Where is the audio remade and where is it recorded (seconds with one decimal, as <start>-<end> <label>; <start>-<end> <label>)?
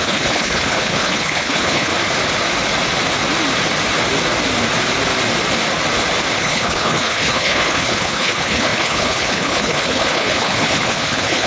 0.0-1.9 remade; 1.9-6.4 recorded; 6.4-11.5 remade